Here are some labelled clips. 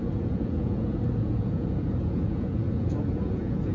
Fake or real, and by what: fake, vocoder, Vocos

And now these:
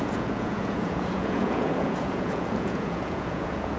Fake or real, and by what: fake, vocoder, Vocos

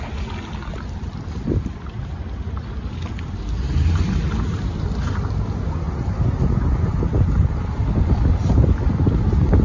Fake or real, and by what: real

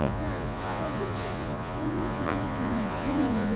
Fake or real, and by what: fake, vocoder, Vocos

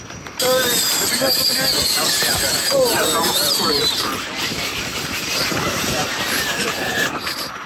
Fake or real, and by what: fake, vocoder, BigVGAN v2